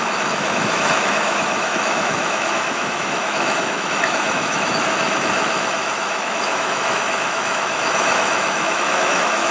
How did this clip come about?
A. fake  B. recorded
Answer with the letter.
A